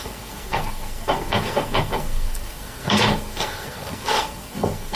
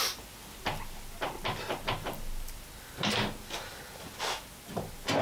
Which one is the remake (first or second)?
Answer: first